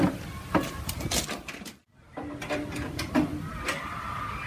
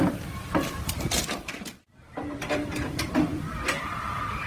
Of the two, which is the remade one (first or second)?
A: second